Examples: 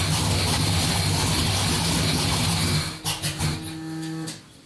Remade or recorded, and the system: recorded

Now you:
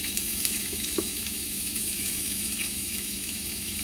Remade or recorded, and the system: remade, autoencoder, DAC-VAE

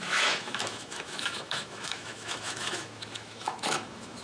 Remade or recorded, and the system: remade, autoencoder, DAC-VAE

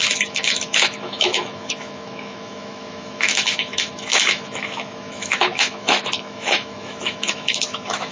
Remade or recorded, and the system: remade, autoencoder, DAC-VAE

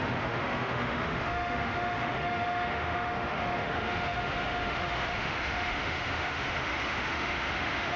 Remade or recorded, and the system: remade, autoencoder, DAC-VAE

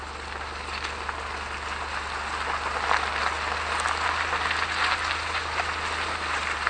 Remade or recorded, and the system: recorded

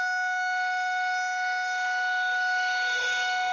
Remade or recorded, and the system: remade, autoencoder, DAC-VAE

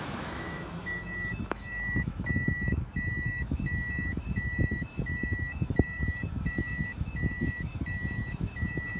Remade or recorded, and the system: remade, autoencoder, DAC-VAE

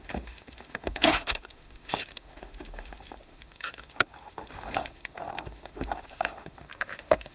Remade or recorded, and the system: remade, autoencoder, DAC-VAE